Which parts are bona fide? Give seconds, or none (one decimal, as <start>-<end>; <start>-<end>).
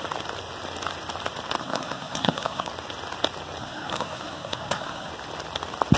0.0-1.6; 2.7-3.6; 5.1-6.0